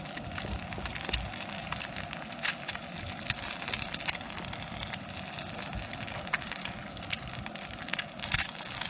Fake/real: real